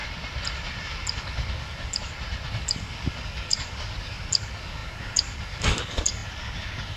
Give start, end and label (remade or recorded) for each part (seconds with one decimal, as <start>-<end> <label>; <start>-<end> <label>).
0.0-1.2 recorded; 1.2-2.0 remade; 2.0-2.5 recorded; 2.5-7.0 remade